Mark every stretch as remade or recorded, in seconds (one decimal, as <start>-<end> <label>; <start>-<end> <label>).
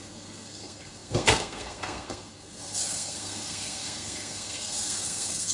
0.0-5.5 remade